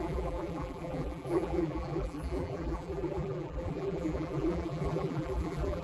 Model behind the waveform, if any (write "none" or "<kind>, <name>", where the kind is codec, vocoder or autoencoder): vocoder, BigVGAN v2